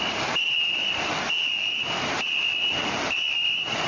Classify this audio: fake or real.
real